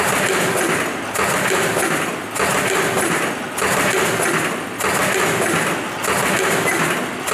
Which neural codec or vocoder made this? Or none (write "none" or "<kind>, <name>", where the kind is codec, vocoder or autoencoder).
none